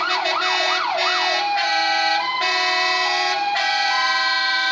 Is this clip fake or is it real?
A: fake